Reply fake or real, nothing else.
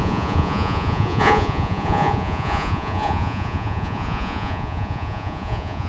fake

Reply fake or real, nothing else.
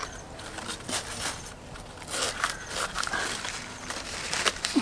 real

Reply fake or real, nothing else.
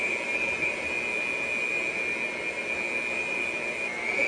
real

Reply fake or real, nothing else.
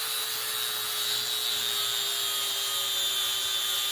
real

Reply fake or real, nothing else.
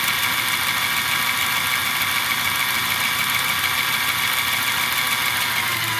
real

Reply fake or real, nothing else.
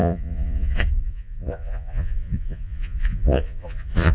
fake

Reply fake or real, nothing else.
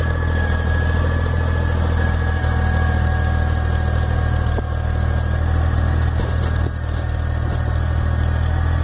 real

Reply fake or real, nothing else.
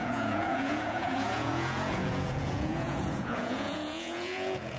fake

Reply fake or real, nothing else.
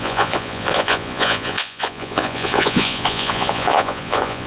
fake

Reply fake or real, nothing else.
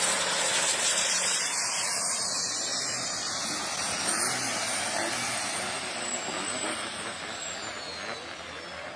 real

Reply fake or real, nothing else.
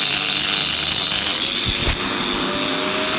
real